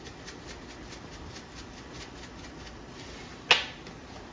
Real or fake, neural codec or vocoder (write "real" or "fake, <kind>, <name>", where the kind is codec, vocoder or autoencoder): real